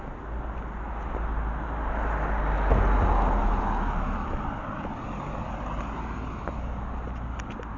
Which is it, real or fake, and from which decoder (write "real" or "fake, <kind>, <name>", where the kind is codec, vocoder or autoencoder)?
real